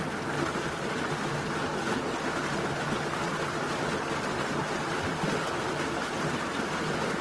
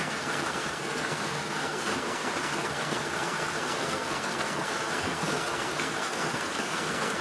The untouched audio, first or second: first